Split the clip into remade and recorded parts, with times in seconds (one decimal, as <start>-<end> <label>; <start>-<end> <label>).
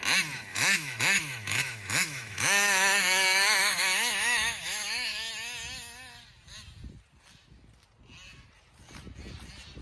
0.0-0.5 recorded; 0.5-5.3 remade; 5.3-9.8 recorded